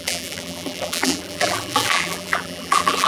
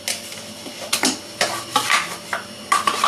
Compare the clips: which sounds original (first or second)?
second